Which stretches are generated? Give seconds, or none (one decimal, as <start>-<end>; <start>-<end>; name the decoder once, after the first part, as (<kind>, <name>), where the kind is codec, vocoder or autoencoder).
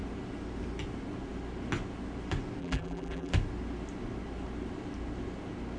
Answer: 2.6-3.3 (vocoder, BigVGAN v2)